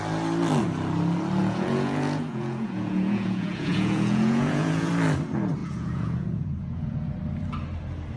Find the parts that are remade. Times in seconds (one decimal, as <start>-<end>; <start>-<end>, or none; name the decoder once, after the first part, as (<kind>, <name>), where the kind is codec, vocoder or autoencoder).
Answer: 1.4-4.9 (vocoder, Vocos); 5.6-7.1